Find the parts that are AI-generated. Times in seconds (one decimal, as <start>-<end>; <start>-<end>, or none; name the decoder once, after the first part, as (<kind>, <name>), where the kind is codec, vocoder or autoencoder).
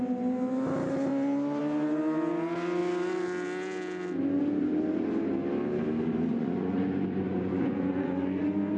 6.3-8.4 (vocoder, Vocos)